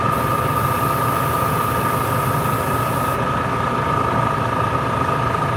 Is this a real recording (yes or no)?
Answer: yes